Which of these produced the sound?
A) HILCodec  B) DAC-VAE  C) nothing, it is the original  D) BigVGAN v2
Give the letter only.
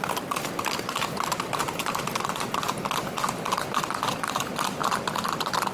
C